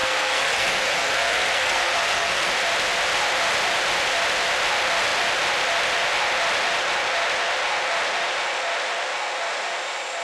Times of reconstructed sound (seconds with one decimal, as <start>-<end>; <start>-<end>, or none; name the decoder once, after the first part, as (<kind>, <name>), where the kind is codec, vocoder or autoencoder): 0.0-2.5 (codec, SNAC)